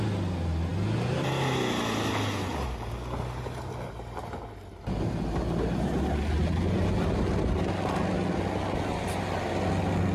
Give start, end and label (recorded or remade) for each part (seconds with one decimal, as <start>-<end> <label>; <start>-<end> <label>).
0.0-10.1 recorded